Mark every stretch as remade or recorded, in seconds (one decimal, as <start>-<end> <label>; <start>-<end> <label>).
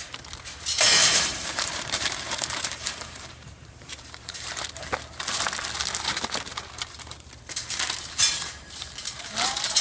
0.0-1.0 recorded; 1.0-4.6 remade; 4.6-6.5 recorded; 6.5-7.3 remade; 7.3-9.8 recorded